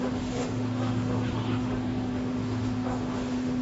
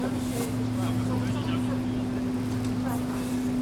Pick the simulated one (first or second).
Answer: first